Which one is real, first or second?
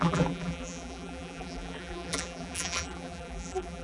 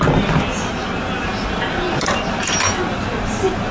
second